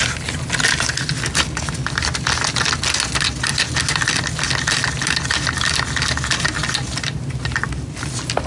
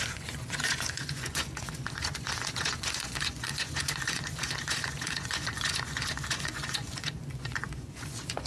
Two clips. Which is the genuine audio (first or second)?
first